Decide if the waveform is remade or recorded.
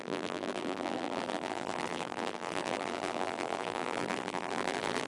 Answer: remade